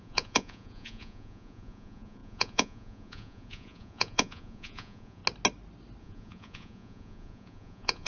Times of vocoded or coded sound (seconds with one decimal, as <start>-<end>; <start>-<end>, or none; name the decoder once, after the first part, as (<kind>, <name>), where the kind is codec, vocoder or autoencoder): 0.0-5.2 (vocoder, Vocos); 6.0-8.1